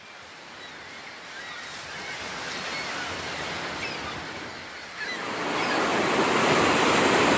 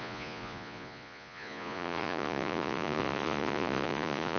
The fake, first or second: second